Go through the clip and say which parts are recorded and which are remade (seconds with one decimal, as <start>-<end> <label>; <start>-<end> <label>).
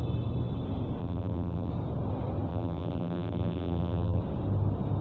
0.0-1.0 recorded; 1.0-1.7 remade; 1.7-2.5 recorded; 2.5-4.2 remade; 4.2-5.0 recorded